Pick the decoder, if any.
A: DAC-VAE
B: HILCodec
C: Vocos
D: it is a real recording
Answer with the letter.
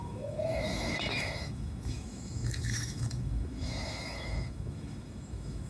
A